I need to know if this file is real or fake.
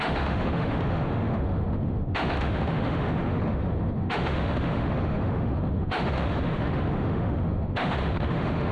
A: fake